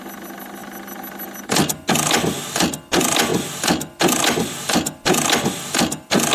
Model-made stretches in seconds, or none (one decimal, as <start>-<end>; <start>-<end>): none